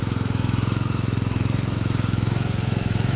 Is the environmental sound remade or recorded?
remade